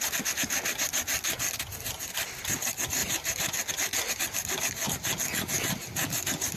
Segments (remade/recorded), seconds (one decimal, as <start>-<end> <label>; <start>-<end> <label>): 0.0-3.0 recorded; 3.0-3.7 remade; 3.7-6.6 recorded